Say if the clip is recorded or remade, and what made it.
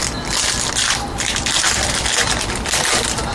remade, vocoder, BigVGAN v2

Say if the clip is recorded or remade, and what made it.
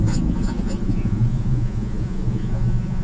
remade, vocoder, Vocos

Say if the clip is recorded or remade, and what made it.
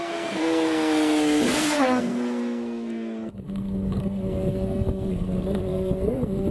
remade, codec, SNAC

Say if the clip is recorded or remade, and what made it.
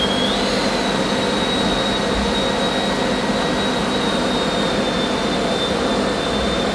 recorded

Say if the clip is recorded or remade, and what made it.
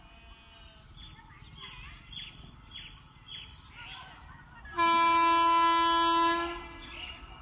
recorded